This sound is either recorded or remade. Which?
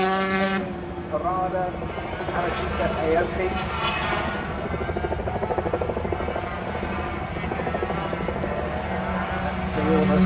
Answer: recorded